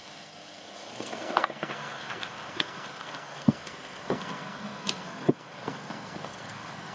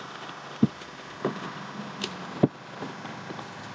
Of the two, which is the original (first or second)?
second